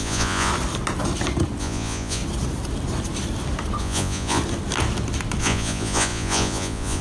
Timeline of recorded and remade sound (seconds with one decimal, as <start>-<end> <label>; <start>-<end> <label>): 0.0-0.5 remade; 0.5-1.6 recorded; 1.6-2.2 remade; 2.2-3.8 recorded; 3.8-4.4 remade; 4.4-5.4 recorded; 5.4-7.0 remade